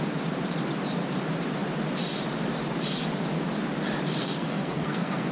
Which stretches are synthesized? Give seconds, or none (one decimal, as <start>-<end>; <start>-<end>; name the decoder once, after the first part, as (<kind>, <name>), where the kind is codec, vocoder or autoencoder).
4.2-5.3 (codec, SNAC)